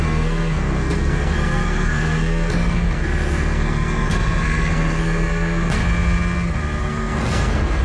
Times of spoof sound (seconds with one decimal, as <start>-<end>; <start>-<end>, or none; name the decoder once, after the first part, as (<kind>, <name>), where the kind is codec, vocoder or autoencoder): 0.0-5.8 (codec, SNAC); 6.8-7.8